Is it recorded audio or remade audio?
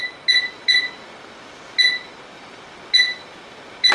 recorded